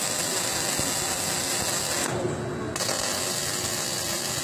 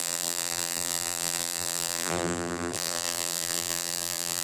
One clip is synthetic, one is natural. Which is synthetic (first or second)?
second